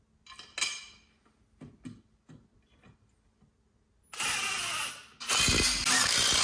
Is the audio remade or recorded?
recorded